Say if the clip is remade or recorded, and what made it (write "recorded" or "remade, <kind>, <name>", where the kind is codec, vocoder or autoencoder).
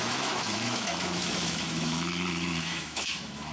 remade, autoencoder, DAC-VAE